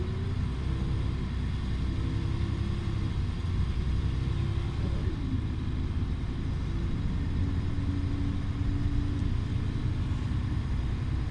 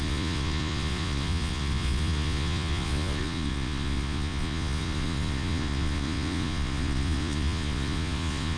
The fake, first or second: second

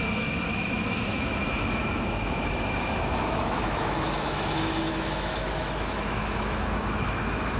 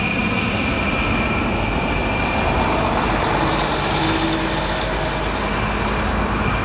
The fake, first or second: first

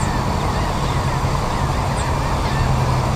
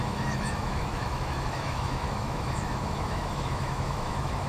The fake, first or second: second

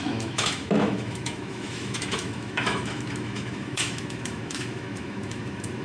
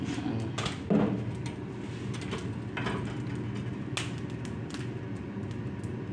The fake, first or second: first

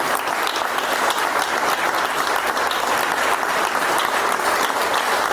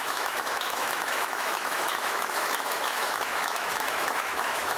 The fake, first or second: second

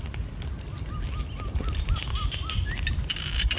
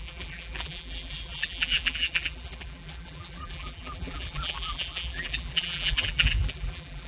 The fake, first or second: second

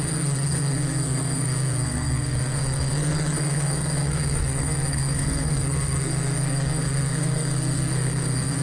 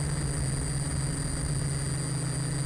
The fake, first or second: first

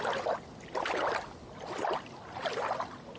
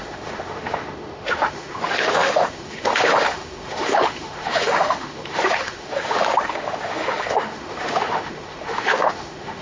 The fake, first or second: second